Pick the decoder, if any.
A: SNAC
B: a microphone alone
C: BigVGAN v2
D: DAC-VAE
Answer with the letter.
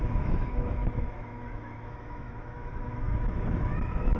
D